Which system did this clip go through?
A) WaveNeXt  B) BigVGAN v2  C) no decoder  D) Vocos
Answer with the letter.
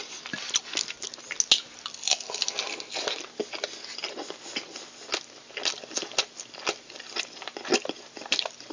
C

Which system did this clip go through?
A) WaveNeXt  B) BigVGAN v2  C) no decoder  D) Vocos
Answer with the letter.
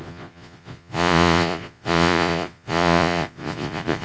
D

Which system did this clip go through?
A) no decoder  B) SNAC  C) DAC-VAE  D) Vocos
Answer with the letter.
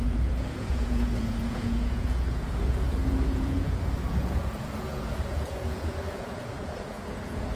D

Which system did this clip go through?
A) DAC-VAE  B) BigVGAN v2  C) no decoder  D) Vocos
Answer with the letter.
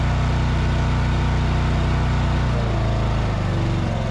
C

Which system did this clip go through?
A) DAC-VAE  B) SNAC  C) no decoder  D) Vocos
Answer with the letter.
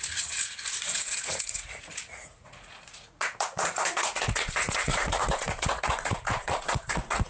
D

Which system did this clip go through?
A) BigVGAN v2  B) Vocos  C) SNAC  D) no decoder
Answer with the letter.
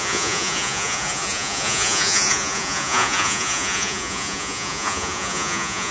B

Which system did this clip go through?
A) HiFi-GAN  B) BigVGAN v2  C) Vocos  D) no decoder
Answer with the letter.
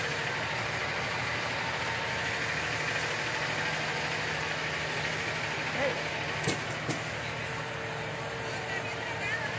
D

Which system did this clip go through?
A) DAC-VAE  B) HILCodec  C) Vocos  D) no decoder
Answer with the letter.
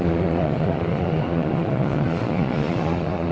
C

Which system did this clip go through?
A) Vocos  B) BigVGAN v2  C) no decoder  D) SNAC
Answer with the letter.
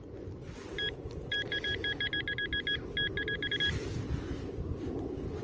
C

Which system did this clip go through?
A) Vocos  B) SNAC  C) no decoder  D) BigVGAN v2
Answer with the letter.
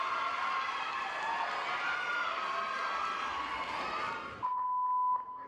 C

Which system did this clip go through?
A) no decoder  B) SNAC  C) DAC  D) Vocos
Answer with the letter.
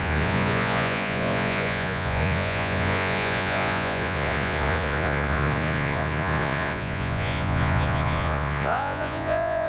D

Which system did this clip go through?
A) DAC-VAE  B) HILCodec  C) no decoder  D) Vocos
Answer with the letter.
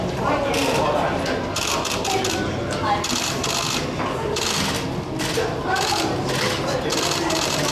C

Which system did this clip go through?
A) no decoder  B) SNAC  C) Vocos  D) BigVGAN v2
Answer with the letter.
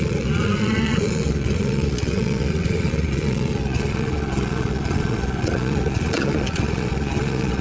C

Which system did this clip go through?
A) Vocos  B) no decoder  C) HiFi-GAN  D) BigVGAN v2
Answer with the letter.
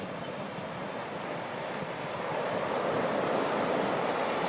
B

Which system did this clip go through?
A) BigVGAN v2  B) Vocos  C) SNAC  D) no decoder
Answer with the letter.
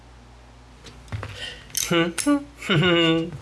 D